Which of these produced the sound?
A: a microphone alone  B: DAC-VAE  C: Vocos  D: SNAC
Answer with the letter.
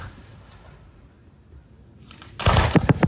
A